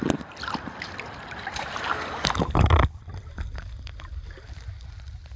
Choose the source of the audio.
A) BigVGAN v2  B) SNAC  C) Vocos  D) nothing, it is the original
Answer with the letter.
D